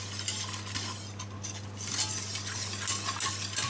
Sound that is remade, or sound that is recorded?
recorded